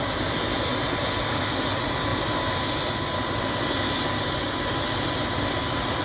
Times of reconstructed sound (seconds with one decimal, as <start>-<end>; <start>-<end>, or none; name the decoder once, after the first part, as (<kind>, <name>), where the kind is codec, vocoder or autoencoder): none

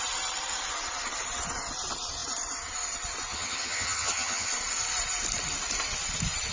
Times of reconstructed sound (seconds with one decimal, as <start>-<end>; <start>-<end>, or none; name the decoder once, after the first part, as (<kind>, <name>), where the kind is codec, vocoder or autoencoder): 3.3-4.5 (vocoder, HiFi-GAN)

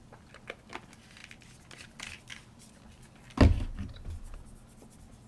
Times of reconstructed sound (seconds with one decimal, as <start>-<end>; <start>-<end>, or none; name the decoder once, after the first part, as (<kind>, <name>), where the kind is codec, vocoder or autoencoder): none

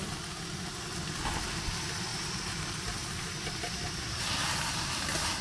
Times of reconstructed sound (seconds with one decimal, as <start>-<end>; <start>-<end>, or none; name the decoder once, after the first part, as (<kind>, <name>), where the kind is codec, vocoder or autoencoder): none